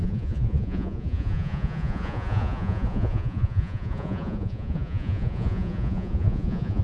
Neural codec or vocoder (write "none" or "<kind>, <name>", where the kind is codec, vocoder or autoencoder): vocoder, Vocos